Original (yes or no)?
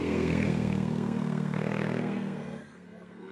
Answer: no